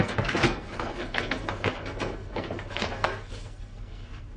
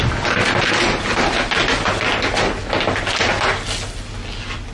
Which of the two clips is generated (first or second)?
first